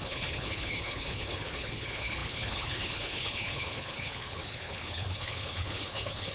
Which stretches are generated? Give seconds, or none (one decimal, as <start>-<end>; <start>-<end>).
0.0-6.3